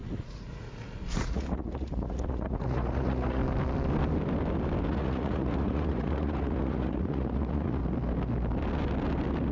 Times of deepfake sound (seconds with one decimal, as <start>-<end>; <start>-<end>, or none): 0.0-3.4; 4.9-7.8